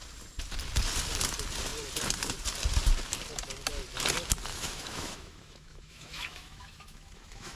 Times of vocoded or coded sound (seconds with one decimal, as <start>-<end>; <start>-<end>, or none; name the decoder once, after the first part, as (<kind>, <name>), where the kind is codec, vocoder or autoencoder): 4.5-7.6 (autoencoder, DAC-VAE)